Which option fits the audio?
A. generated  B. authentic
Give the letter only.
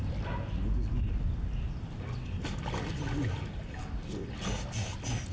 B